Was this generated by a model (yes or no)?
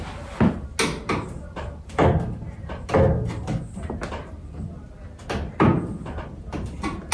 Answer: no